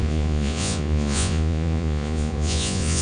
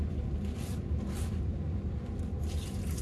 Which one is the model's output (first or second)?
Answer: first